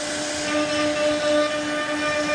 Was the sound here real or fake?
real